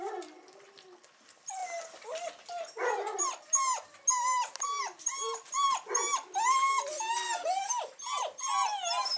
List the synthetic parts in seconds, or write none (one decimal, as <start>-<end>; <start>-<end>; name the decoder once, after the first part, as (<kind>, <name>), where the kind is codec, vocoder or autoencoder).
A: none